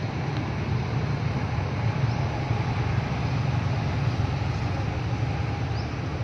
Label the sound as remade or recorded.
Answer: recorded